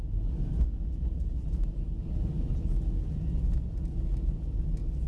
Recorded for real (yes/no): yes